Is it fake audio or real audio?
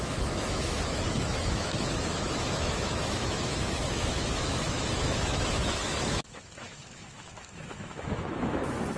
fake